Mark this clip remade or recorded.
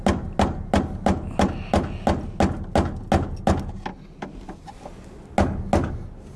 recorded